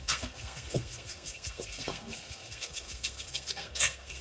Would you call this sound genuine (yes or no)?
no